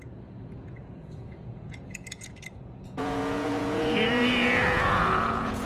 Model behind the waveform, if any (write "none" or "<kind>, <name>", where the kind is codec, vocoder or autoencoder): vocoder, Vocos